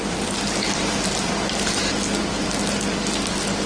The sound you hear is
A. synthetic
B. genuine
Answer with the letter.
B